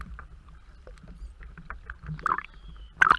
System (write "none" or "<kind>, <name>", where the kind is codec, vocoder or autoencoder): vocoder, BigVGAN v2